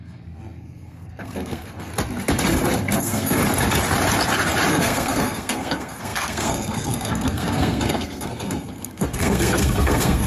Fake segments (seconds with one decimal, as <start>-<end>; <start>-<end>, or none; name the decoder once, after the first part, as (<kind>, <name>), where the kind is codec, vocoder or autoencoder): 0.0-1.9 (codec, SNAC); 3.0-3.4; 4.7-10.3

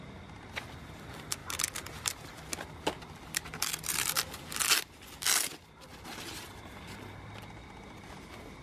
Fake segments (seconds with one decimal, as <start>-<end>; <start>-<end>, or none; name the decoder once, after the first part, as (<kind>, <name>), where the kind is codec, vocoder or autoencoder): none

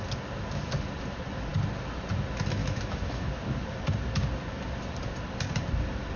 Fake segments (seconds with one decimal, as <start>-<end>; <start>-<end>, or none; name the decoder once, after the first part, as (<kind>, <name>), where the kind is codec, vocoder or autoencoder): 2.6-3.3 (autoencoder, DAC-VAE)

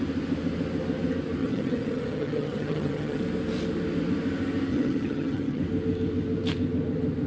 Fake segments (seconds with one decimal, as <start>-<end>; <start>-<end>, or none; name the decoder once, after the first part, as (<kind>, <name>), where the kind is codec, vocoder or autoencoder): 1.4-3.2 (vocoder, HiFi-GAN); 4.7-5.6

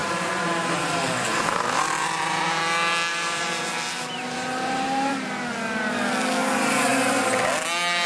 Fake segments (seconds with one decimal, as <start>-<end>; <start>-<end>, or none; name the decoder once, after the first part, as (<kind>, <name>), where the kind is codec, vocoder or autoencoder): 0.0-2.6 (vocoder, BigVGAN v2); 3.1-5.1

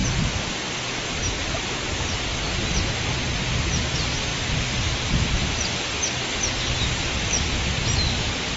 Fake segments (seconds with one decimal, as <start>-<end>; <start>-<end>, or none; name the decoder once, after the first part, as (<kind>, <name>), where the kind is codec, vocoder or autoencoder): none